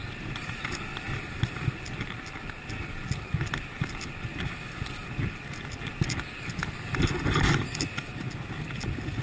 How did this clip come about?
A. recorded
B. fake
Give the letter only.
A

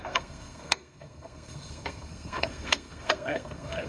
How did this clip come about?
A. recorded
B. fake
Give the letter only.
B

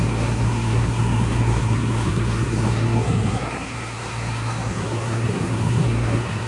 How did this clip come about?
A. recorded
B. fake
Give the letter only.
B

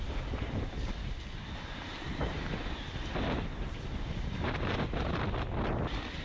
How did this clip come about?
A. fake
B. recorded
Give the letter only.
B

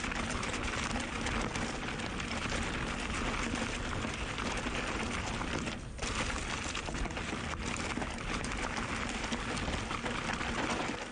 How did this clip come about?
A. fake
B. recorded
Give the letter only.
B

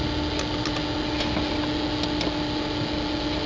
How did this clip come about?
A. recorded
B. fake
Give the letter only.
A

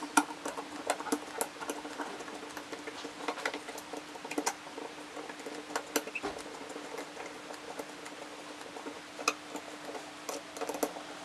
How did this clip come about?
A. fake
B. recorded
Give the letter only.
B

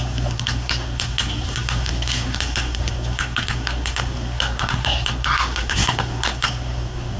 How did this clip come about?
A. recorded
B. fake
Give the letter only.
B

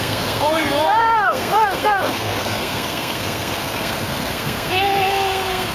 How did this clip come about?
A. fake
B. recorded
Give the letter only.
A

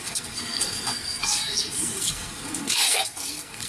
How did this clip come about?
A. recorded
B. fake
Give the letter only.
B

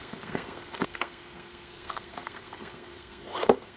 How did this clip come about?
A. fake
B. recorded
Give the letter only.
A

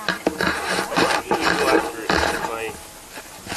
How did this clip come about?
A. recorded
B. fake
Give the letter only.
A